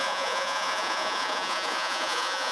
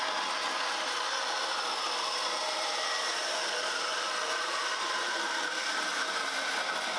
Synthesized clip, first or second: first